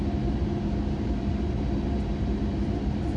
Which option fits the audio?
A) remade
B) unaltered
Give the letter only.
B